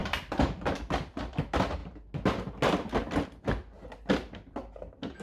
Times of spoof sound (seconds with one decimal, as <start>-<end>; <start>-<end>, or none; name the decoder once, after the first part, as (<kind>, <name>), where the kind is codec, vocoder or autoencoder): 0.0-0.8 (vocoder, BigVGAN v2)

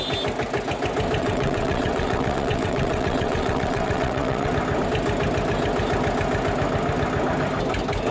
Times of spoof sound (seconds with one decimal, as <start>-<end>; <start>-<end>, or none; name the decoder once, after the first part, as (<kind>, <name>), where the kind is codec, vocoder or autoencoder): 1.2-4.5 (vocoder, WaveNeXt)

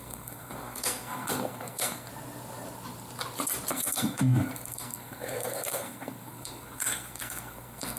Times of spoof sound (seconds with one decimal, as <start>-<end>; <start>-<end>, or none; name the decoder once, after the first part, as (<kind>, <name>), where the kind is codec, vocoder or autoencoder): 0.0-2.1 (codec, SNAC); 3.7-8.0

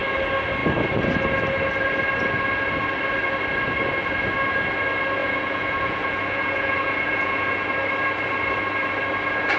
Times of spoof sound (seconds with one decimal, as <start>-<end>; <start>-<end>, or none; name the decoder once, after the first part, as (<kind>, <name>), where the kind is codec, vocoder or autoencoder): 5.2-7.6 (vocoder, Vocos)